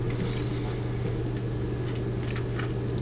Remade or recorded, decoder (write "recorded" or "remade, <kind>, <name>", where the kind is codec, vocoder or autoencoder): recorded